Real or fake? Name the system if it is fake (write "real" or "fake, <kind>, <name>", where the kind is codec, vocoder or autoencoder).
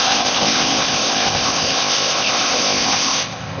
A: fake, codec, ZipCodec